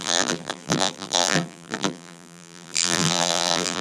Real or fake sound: fake